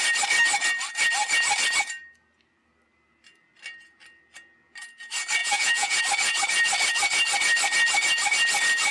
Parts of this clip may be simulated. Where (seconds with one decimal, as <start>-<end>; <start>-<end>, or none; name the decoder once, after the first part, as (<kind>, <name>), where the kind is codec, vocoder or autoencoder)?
5.4-6.0 (vocoder, Vocos)